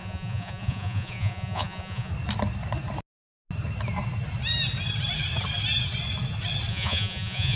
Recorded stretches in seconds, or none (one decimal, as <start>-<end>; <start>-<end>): 2.1-6.7